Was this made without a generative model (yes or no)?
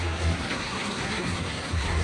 no